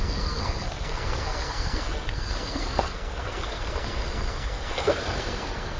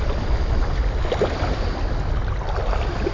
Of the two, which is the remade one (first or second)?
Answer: first